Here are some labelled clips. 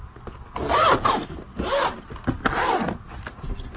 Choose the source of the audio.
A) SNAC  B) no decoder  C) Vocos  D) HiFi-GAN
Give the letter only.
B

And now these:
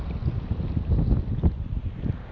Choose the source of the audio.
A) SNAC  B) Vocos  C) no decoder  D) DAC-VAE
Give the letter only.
C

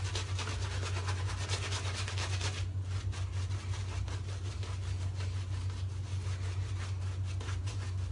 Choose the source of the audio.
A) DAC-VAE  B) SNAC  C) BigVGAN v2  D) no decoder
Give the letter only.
D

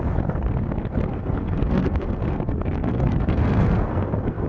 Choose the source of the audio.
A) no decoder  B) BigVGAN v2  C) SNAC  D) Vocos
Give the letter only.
C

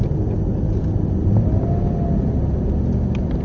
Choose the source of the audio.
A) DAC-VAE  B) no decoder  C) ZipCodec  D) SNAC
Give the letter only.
B